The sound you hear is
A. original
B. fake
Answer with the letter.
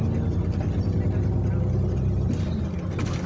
A